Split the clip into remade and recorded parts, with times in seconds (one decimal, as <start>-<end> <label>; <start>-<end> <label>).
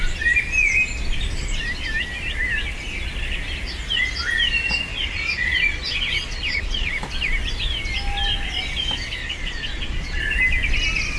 0.0-4.9 recorded; 4.9-6.9 remade; 6.9-9.2 recorded; 9.2-10.2 remade; 10.2-11.2 recorded